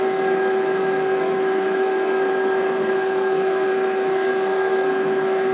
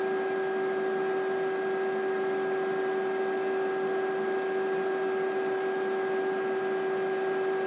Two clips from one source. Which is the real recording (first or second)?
second